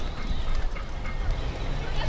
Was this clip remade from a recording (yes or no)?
no